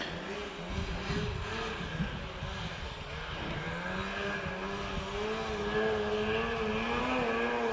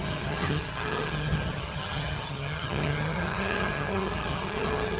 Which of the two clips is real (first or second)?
first